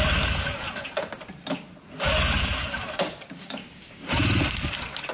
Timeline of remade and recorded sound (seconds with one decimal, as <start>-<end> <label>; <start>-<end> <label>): 0.0-2.6 recorded; 2.6-4.1 remade; 4.1-5.1 recorded